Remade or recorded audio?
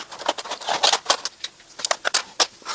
recorded